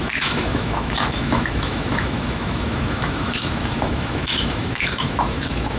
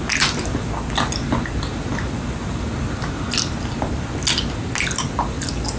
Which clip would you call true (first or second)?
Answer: second